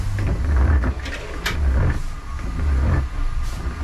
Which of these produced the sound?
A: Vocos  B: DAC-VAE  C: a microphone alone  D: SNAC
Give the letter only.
C